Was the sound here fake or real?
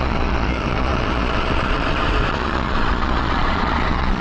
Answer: fake